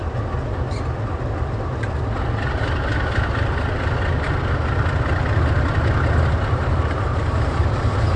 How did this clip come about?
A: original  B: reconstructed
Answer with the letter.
A